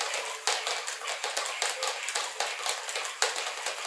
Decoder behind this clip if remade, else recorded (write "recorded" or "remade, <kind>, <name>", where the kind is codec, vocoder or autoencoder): recorded